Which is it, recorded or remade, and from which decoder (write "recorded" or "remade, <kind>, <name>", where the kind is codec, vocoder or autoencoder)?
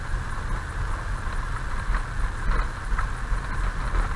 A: recorded